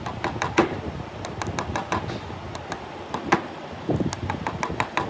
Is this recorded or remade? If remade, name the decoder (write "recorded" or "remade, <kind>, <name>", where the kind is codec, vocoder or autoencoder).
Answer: recorded